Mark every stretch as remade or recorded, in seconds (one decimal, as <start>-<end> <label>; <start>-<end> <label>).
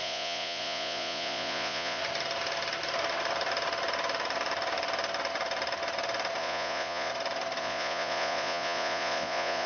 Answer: 0.0-2.0 remade; 2.0-6.4 recorded; 6.4-7.1 remade; 7.1-7.6 recorded; 7.6-9.7 remade